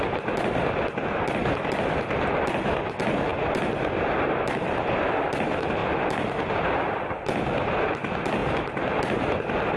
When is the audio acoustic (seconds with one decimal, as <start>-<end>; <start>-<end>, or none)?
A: 0.0-9.8